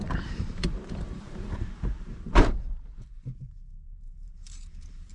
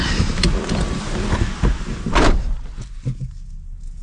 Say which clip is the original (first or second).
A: second